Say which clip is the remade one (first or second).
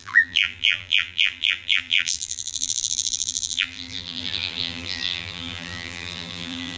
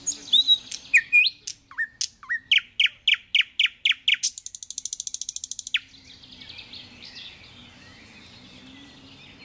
first